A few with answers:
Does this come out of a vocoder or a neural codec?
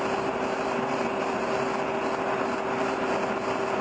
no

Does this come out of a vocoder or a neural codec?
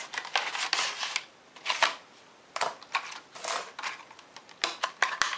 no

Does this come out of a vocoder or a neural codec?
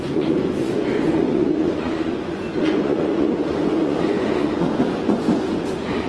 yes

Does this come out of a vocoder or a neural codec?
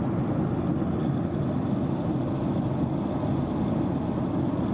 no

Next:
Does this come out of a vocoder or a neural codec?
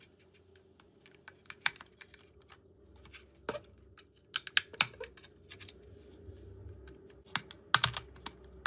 no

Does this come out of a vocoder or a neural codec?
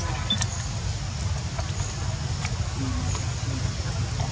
no